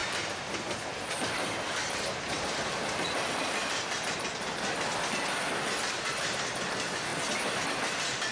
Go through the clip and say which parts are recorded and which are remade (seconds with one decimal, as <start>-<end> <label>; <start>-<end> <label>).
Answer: 0.0-3.8 remade; 3.8-8.3 recorded